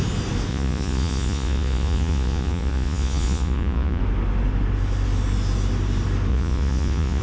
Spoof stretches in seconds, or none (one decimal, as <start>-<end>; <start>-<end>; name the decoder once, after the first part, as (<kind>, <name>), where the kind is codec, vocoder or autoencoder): 0.5-4.0 (vocoder, Vocos); 6.3-7.2